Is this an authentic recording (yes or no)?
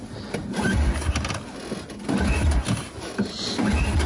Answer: yes